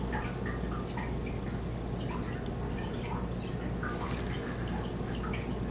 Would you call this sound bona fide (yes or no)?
yes